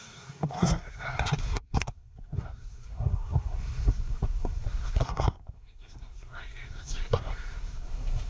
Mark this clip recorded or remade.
remade